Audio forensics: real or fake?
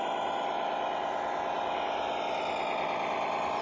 real